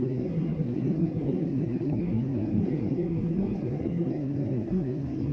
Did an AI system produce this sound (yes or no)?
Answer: yes